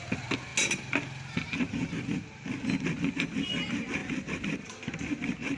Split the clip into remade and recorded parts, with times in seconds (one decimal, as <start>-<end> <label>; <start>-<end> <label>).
0.0-5.6 recorded